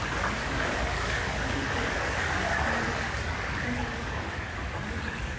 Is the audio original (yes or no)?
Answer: no